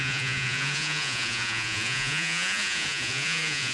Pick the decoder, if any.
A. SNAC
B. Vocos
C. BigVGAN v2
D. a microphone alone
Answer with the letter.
B